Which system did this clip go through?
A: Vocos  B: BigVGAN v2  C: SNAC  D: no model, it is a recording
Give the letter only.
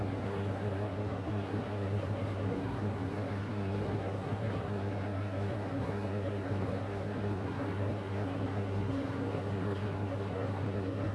C